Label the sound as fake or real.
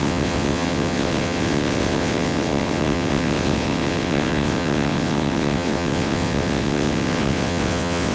fake